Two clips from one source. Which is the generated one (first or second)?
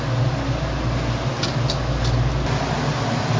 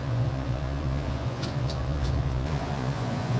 second